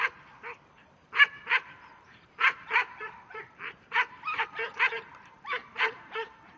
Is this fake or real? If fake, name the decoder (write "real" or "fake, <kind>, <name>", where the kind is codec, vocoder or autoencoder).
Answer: fake, vocoder, BigVGAN v2